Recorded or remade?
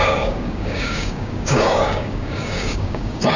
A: remade